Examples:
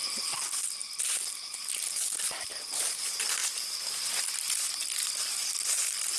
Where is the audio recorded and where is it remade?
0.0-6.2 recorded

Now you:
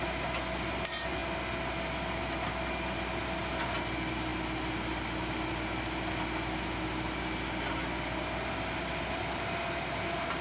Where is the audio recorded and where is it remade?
0.0-10.4 recorded

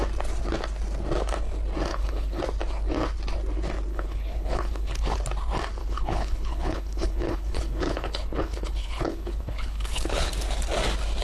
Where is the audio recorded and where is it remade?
0.0-1.9 recorded; 1.9-2.4 remade; 2.4-3.9 recorded; 3.9-5.2 remade; 5.2-5.8 recorded; 5.8-10.3 remade; 10.3-11.2 recorded